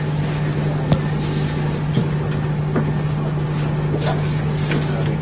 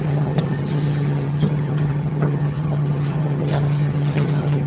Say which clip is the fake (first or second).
second